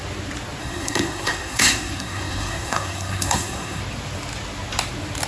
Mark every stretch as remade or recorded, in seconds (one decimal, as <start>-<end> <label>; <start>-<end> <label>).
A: 0.0-0.6 recorded; 0.6-3.8 remade; 3.8-5.3 recorded